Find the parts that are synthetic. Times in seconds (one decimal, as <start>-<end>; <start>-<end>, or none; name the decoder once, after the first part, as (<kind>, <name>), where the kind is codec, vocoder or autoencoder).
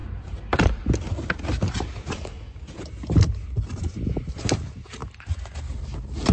none